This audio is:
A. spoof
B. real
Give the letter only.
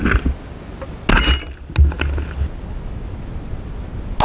B